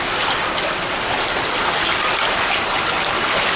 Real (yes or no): yes